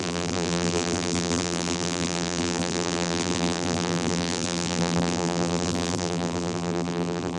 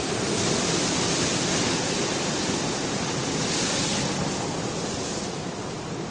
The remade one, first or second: first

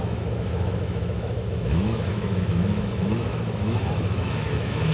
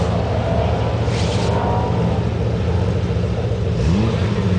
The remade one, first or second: first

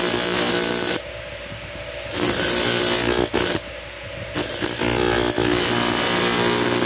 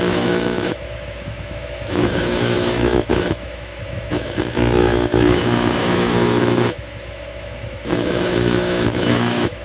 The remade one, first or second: second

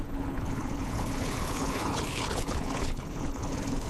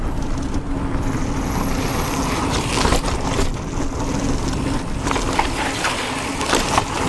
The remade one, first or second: first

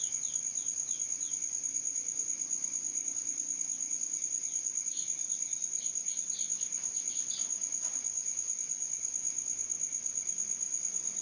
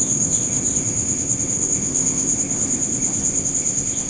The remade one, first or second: second